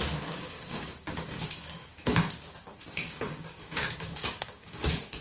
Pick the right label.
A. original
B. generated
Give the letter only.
B